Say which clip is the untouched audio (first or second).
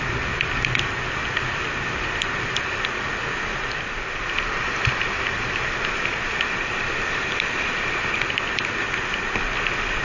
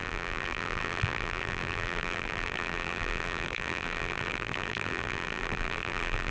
first